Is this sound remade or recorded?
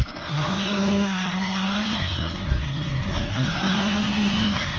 remade